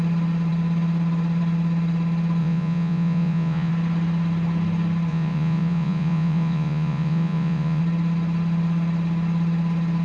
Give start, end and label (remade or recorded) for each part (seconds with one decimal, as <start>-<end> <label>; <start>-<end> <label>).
0.0-2.4 recorded; 2.4-3.7 remade; 3.7-5.1 recorded; 5.1-7.8 remade; 7.8-10.0 recorded